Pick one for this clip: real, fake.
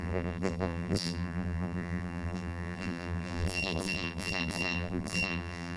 fake